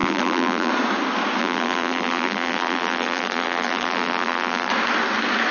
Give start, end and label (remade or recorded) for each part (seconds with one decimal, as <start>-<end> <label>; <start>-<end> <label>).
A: 0.0-0.7 remade; 0.7-1.4 recorded; 1.4-4.7 remade; 4.7-5.5 recorded

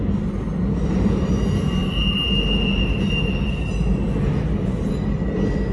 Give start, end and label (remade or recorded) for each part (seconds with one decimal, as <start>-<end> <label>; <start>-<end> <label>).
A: 0.0-5.7 recorded

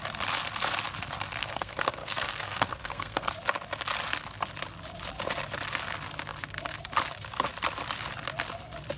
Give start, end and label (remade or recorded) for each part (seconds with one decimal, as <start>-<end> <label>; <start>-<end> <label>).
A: 0.0-1.4 recorded; 1.4-3.3 remade; 3.3-9.0 recorded

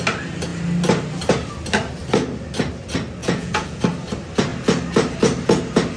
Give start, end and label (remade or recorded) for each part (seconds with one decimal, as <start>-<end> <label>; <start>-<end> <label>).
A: 0.0-3.2 recorded; 3.2-3.8 remade; 3.8-6.0 recorded

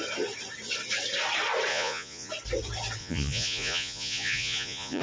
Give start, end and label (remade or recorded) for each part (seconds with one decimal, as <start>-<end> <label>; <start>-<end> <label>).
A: 0.0-1.7 recorded; 1.7-2.3 remade; 2.3-3.0 recorded; 3.0-5.0 remade

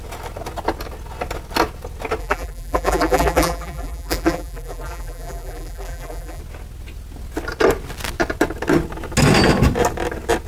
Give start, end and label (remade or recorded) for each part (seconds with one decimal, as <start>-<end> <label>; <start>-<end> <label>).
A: 0.0-2.2 recorded; 2.2-6.4 remade; 6.4-10.5 recorded